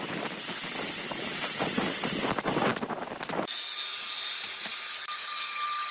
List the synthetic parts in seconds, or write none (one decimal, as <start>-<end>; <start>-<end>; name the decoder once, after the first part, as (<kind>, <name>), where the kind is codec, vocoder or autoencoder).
none